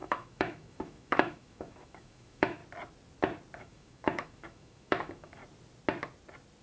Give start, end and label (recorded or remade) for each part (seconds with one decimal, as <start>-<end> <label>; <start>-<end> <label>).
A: 0.0-2.6 remade; 2.6-3.6 recorded; 3.6-5.4 remade; 5.4-6.6 recorded